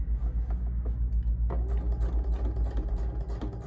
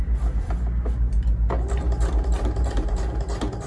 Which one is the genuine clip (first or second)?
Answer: first